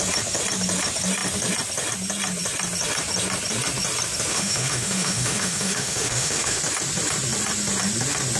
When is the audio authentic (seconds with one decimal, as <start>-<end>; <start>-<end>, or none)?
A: 0.0-4.3; 6.6-8.4